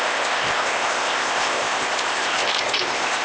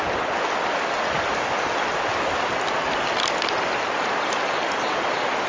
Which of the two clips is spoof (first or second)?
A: first